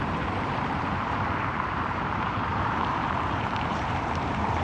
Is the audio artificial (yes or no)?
yes